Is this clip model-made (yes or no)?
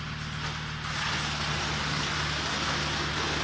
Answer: no